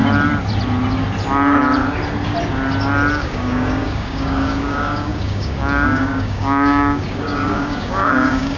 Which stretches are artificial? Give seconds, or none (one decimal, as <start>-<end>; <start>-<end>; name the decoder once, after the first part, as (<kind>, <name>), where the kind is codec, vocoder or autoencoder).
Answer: 3.1-8.6 (codec, DAC)